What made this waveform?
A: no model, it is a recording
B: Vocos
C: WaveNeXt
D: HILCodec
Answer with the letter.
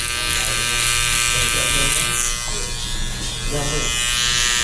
A